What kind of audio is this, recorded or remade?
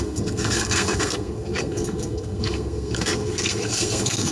remade